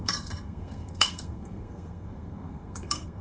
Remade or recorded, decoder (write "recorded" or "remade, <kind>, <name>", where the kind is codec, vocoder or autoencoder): remade, codec, SNAC